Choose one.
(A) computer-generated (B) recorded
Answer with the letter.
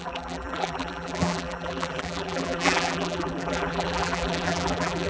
A